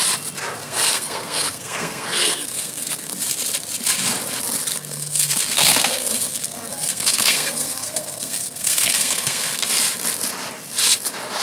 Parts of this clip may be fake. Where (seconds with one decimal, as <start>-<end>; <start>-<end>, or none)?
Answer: 0.6-3.1; 4.7-9.7